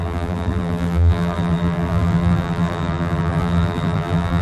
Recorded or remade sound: remade